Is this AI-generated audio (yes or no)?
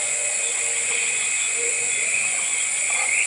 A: yes